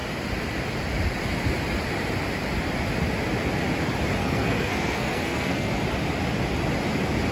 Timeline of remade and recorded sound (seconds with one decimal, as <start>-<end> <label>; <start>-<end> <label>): 0.0-4.2 recorded; 4.2-5.7 remade; 5.7-7.3 recorded